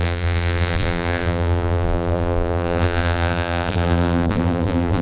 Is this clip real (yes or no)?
no